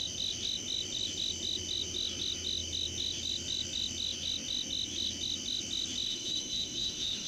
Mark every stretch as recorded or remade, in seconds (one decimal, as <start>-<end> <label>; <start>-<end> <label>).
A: 0.0-6.1 recorded; 6.1-7.3 remade